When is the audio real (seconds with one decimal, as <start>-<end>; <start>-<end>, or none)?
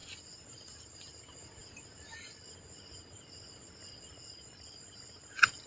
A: 0.0-5.7